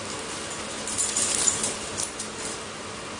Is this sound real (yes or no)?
yes